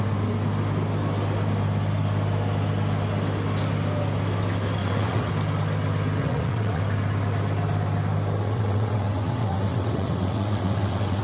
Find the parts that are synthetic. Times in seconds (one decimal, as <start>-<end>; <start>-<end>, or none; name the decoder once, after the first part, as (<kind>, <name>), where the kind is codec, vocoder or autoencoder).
4.8-5.3 (vocoder, WaveNeXt); 6.2-6.8; 8.4-11.2